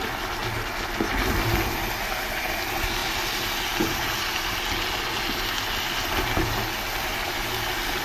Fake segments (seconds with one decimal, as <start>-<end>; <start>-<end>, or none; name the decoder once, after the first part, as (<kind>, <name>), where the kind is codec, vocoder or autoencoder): none